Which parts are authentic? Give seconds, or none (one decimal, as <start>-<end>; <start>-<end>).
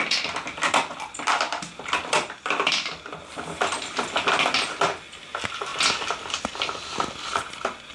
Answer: 0.0-7.9